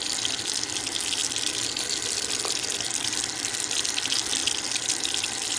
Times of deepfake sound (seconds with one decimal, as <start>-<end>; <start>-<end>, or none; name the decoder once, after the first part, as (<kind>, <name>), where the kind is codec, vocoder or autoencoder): none